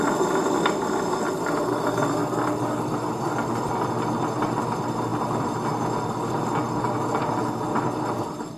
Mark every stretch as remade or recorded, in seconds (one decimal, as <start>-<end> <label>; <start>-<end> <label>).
0.0-8.6 recorded